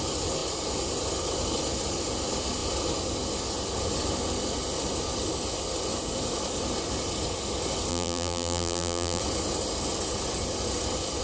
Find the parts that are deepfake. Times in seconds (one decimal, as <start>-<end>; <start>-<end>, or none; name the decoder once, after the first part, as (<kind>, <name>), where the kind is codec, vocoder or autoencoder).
7.9-9.2 (vocoder, BigVGAN v2)